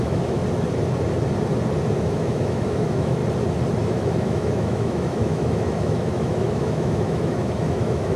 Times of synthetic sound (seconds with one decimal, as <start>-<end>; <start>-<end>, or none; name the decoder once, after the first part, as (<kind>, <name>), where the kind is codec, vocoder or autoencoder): 0.0-0.4 (autoencoder, DAC-VAE); 2.0-3.2; 3.8-8.2